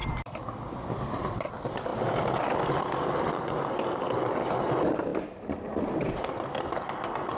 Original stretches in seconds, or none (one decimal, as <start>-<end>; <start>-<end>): none